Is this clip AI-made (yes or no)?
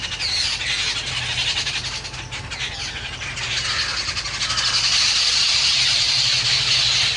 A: no